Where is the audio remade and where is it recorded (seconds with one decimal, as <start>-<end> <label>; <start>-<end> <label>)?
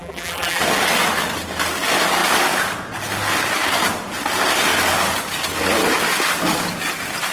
0.0-0.6 remade; 0.6-7.3 recorded